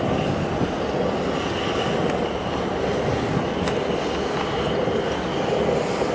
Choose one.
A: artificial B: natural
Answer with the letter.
B